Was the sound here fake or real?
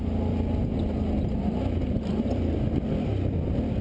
real